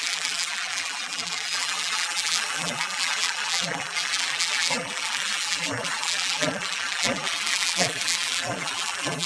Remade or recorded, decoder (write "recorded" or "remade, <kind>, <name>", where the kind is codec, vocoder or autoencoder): remade, vocoder, BigVGAN v2